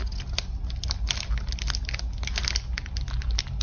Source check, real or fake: real